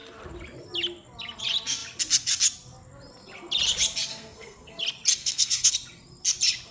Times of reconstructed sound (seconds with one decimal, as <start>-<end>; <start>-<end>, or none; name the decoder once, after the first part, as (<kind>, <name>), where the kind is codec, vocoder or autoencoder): 4.1-4.8 (codec, SNAC); 5.2-5.7